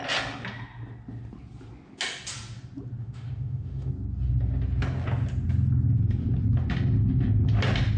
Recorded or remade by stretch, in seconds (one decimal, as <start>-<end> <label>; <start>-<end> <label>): 0.0-3.0 recorded; 3.0-3.9 remade; 3.9-8.0 recorded

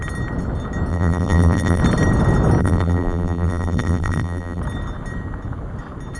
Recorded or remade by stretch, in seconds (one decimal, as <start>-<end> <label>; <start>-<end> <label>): 0.0-0.9 recorded; 0.9-1.8 remade; 1.8-2.6 recorded; 2.6-4.6 remade; 4.6-6.2 recorded